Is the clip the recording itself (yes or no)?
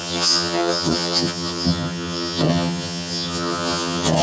no